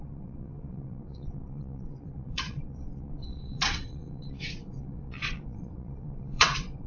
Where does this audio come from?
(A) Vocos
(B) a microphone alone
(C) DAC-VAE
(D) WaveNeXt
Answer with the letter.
D